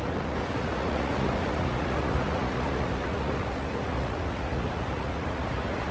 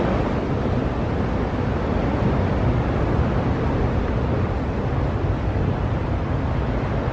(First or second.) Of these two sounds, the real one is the second